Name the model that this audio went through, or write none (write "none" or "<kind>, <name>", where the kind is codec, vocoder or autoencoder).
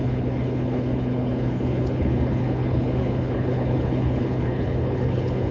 codec, HILCodec